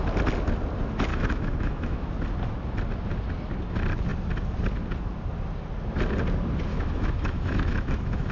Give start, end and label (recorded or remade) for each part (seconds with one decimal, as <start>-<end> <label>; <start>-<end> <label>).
0.0-1.1 recorded; 1.1-2.1 remade; 2.1-6.7 recorded; 6.7-8.3 remade